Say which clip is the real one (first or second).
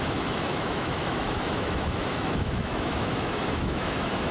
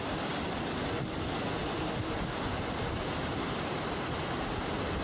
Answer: second